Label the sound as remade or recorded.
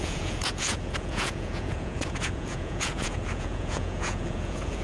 remade